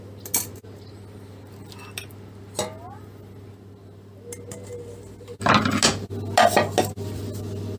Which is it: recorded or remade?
recorded